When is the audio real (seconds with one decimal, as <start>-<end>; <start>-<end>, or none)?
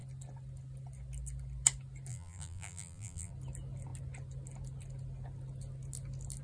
0.0-2.1; 3.3-6.4